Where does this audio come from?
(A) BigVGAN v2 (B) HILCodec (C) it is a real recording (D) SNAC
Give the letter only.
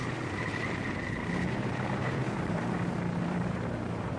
A